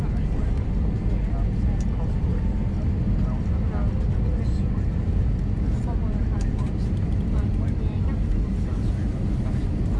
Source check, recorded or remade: recorded